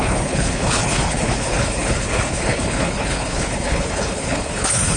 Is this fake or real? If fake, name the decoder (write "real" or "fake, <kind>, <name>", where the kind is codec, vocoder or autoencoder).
fake, codec, HILCodec